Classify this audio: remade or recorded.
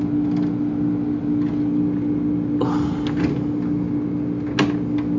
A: recorded